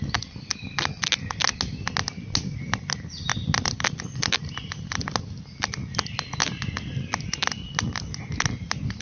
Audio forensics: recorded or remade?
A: recorded